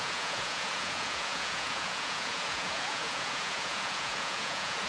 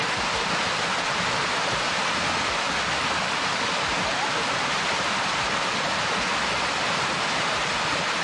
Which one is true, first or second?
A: second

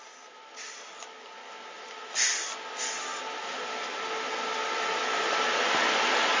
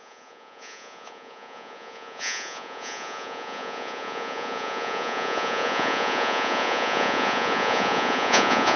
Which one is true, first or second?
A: first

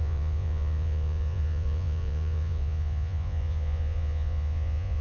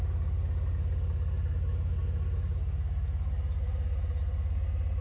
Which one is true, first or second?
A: second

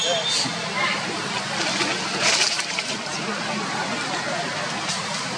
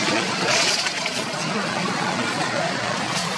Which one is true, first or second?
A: first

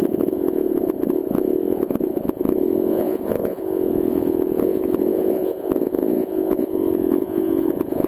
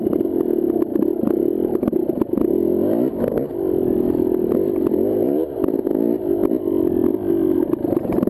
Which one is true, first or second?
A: second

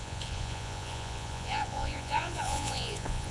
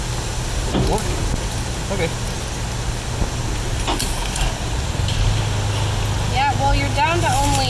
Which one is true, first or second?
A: second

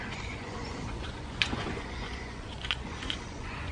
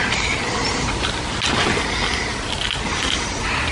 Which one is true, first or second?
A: second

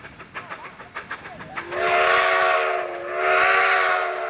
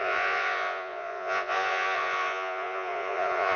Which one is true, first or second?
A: first